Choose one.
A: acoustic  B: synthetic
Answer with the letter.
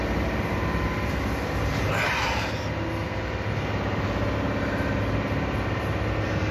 A